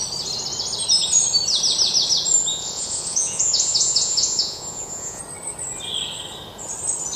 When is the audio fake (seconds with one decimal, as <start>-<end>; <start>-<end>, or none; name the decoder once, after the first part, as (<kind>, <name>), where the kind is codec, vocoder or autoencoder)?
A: 2.5-5.2 (vocoder, Vocos)